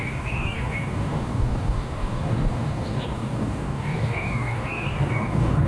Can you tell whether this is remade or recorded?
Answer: remade